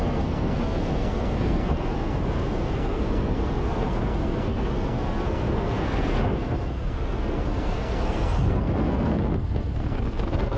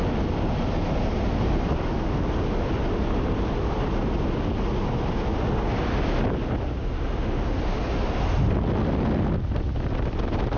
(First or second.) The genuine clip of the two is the second